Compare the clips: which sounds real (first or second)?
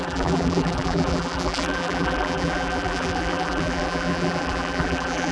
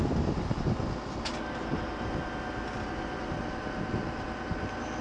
second